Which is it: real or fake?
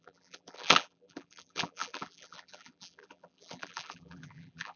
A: fake